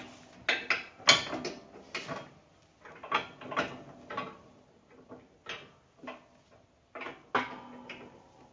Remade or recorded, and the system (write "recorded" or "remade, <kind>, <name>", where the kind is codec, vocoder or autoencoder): recorded